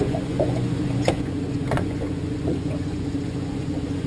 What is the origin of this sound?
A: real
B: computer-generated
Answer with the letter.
B